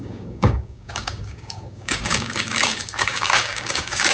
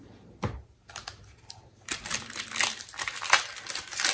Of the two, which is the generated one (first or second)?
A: first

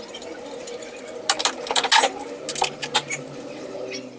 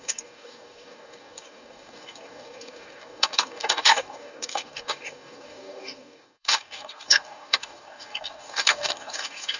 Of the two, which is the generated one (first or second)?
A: second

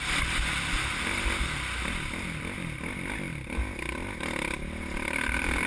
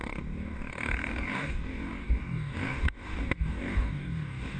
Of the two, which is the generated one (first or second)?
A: second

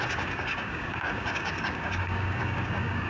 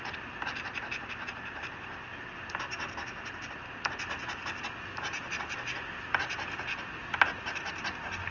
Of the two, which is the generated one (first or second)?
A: first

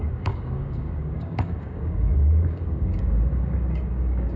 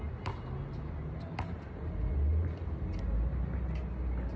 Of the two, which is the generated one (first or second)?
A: first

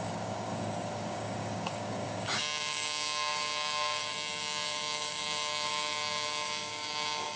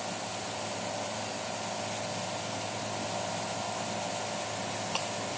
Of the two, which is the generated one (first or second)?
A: first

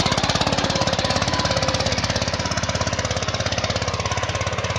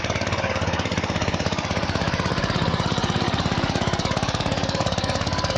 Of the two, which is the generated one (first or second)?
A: second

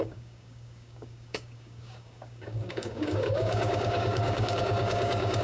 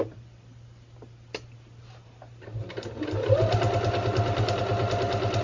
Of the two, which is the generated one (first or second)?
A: first